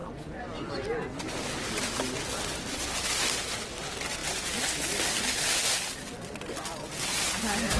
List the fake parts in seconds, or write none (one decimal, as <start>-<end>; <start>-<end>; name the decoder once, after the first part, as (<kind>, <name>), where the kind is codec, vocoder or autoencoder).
none